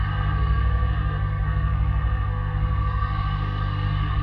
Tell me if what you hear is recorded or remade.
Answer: remade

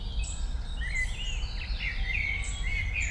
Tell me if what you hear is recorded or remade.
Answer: recorded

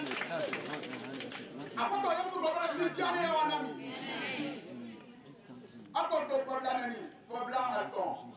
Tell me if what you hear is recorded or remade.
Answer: recorded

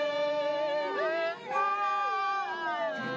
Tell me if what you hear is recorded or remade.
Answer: recorded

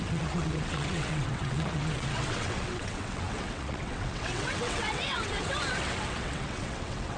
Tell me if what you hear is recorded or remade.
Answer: remade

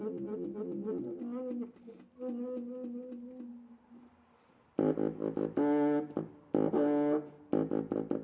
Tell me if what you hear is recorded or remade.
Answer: recorded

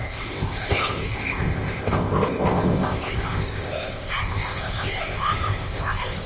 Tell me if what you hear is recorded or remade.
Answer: remade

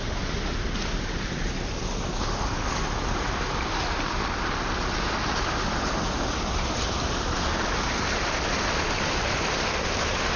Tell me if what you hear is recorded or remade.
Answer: recorded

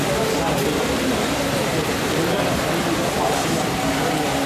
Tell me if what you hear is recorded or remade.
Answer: recorded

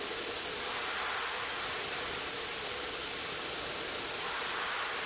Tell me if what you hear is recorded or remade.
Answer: recorded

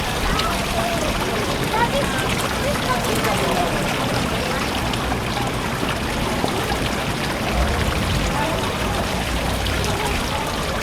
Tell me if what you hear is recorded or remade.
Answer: remade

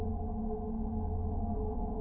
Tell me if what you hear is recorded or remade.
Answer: recorded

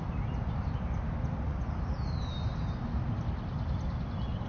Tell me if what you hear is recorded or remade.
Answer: recorded